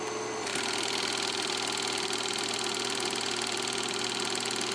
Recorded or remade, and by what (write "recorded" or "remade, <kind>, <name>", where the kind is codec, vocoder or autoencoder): recorded